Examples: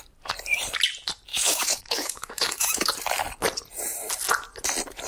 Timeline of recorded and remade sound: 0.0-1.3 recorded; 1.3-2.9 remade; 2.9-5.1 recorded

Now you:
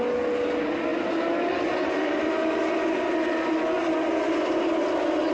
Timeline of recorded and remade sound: 0.0-5.3 recorded